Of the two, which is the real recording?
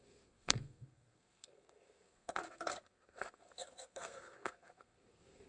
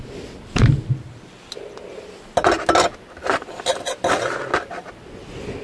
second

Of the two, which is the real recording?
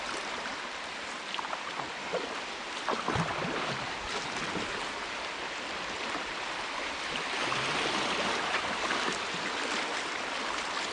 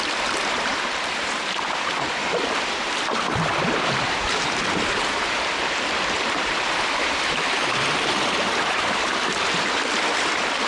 first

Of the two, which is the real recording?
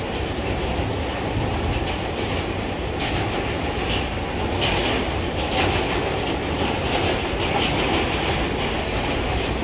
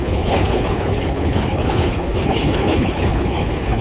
first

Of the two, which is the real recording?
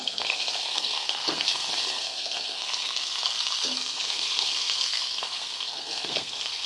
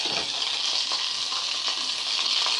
second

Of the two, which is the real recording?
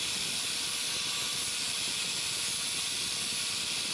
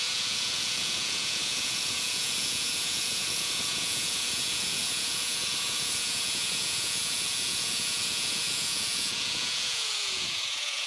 first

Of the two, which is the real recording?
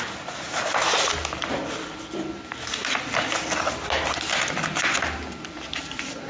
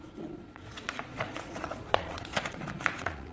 first